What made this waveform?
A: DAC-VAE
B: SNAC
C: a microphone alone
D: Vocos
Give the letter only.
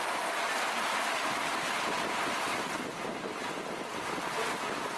C